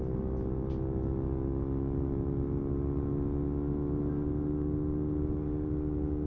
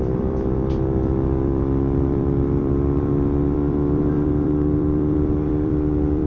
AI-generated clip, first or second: second